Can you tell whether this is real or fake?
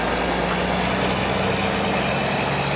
real